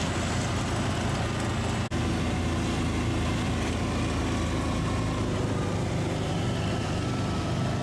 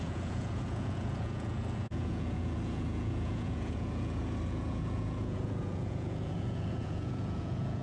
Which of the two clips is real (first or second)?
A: first